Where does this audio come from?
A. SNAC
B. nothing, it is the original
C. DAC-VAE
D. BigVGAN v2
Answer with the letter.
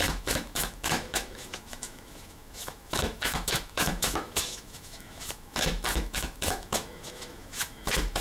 C